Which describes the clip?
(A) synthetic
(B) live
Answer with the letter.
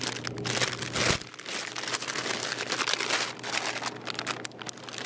B